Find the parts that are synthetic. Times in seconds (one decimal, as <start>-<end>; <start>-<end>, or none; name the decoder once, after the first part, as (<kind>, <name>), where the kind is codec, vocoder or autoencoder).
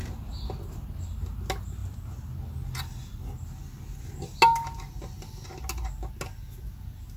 none